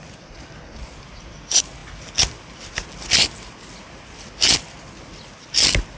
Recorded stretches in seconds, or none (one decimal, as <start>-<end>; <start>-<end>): 0.0-6.0